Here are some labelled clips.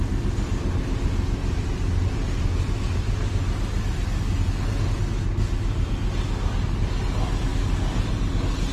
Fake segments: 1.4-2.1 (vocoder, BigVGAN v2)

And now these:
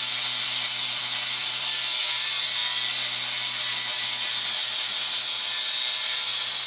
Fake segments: none

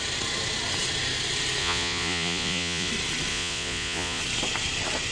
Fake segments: 1.6-2.9 (vocoder, Vocos); 3.3-4.2